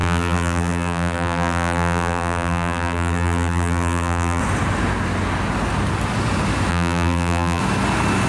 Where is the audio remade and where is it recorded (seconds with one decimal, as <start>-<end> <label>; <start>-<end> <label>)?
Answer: 0.0-4.4 remade; 4.4-6.7 recorded; 6.7-7.6 remade; 7.6-8.3 recorded